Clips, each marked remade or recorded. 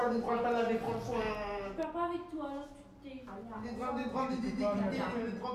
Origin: recorded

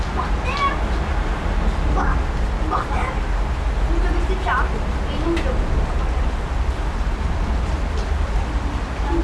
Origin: recorded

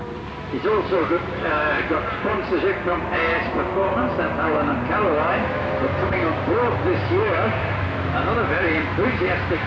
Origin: remade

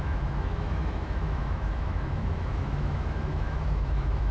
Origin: remade